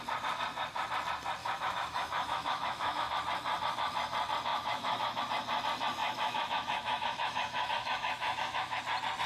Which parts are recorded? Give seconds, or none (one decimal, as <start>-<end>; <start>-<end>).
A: 0.0-1.4; 3.1-4.5; 5.2-6.0; 8.8-9.3